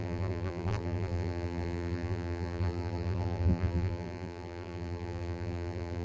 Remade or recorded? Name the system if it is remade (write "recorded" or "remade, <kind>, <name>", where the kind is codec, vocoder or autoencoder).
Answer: remade, vocoder, BigVGAN v2